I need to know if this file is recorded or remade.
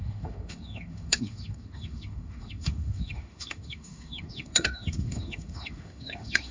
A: remade